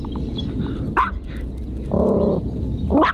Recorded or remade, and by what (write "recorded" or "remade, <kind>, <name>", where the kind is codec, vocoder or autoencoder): recorded